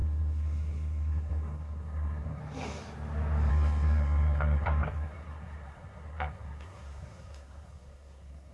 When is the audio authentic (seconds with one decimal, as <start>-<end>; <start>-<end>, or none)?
2.4-3.5